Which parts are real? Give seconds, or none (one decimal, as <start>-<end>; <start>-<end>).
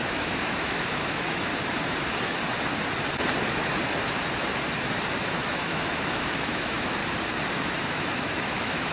1.5-5.1; 7.0-7.8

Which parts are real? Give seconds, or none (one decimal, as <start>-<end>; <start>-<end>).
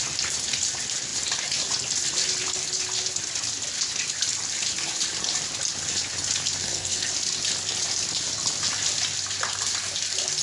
0.0-6.6; 7.1-10.4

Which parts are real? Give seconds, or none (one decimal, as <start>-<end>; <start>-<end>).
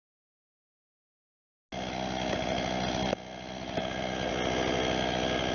0.0-5.5